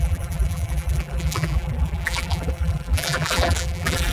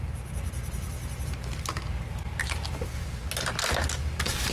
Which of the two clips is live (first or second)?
second